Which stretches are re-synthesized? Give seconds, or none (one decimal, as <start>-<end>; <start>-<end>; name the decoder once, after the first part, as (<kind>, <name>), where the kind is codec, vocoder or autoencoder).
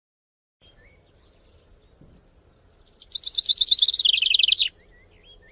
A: none